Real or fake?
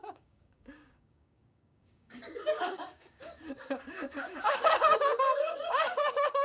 fake